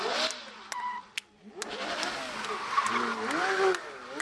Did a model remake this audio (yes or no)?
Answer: no